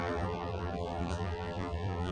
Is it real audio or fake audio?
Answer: fake